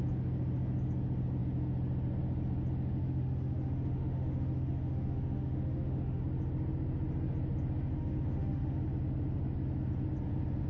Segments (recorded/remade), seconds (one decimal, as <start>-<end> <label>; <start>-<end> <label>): 0.0-3.0 recorded; 3.0-6.2 remade; 6.2-7.9 recorded; 7.9-8.8 remade; 8.8-10.7 recorded